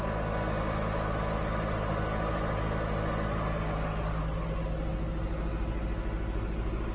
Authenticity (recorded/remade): recorded